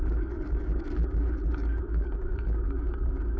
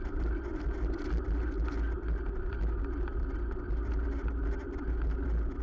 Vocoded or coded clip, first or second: first